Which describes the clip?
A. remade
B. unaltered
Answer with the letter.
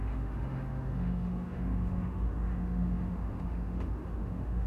A